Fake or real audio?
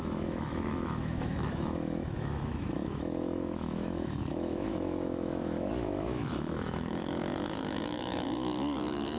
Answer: fake